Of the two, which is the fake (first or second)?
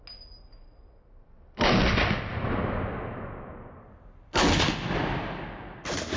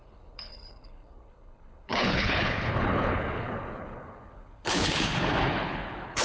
second